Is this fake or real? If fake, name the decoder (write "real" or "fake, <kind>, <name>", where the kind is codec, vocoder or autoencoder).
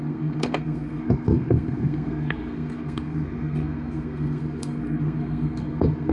fake, codec, SNAC